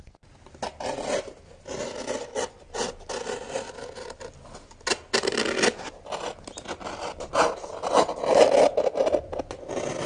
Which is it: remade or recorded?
recorded